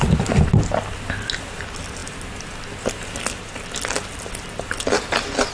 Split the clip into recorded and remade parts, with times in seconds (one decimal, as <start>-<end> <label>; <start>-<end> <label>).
0.0-5.5 recorded